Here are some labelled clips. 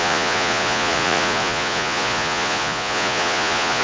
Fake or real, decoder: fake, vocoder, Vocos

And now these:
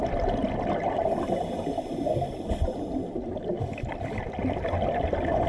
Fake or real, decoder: real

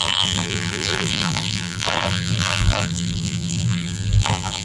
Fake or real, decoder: fake, vocoder, BigVGAN v2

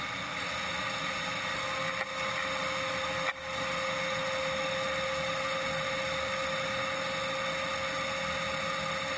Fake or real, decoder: real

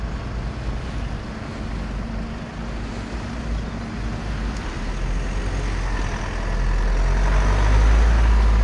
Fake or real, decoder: real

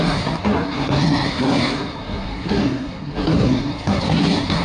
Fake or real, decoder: fake, codec, SNAC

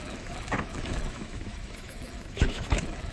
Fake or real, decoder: fake, autoencoder, DAC-VAE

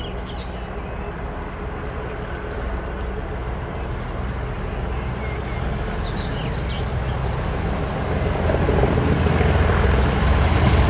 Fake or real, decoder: real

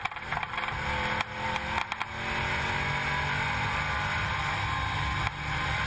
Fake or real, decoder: real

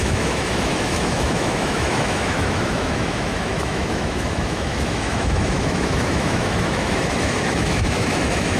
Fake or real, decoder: fake, autoencoder, DAC-VAE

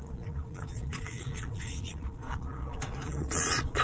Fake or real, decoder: fake, vocoder, Vocos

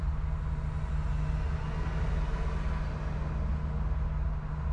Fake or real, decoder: real